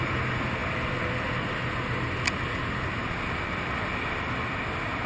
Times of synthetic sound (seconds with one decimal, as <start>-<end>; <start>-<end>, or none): none